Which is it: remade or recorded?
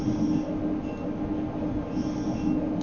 recorded